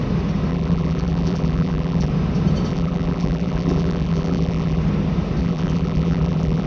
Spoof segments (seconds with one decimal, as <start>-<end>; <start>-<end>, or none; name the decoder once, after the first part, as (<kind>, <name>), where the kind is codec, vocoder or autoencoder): 0.5-2.1 (vocoder, BigVGAN v2); 2.7-4.8; 5.4-6.7